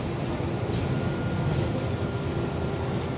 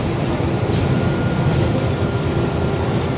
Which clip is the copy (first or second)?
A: second